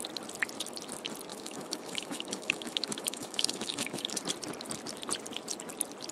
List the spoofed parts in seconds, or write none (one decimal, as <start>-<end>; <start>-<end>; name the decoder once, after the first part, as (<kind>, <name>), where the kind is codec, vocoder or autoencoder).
1.3-4.2 (autoencoder, DAC-VAE)